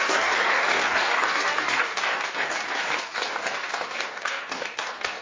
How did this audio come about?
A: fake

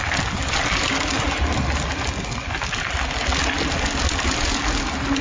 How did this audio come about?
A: real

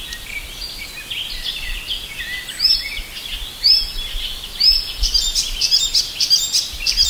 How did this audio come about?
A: real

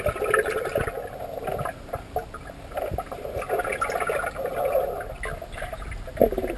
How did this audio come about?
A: real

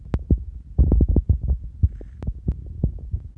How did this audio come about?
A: real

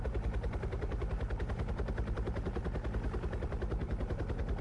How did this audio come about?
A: fake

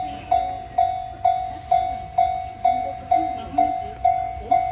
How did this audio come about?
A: real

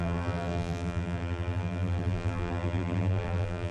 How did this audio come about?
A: fake